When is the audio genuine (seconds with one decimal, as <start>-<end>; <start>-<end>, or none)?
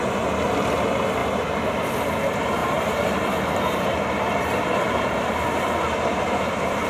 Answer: 0.0-1.2; 1.7-2.6